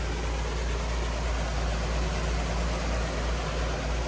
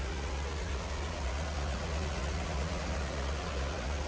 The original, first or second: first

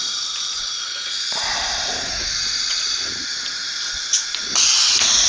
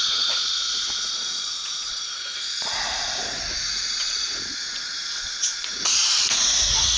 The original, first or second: first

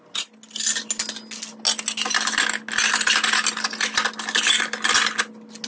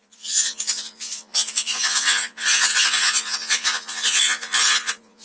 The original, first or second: first